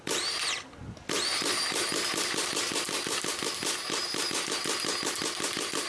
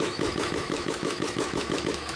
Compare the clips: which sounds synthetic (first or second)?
second